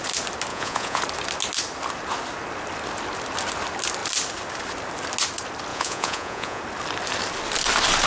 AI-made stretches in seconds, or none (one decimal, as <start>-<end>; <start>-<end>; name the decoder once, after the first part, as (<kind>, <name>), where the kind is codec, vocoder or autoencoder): 0.5-1.0 (vocoder, Vocos); 5.7-6.6